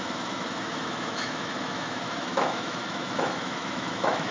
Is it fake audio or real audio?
fake